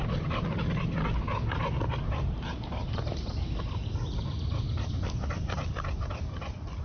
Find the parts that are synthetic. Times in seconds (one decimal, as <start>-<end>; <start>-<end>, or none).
none